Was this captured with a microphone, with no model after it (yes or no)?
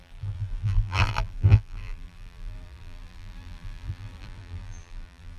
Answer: no